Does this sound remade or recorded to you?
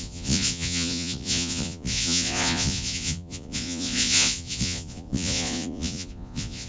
remade